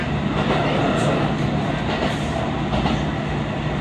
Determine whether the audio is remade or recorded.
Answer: recorded